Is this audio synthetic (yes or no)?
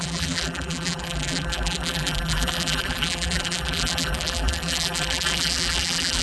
yes